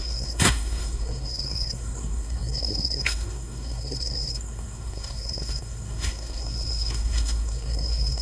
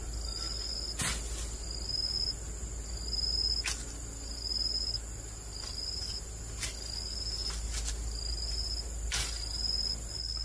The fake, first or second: first